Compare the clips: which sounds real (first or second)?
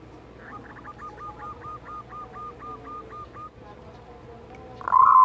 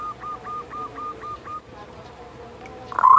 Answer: first